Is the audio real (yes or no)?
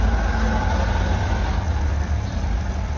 yes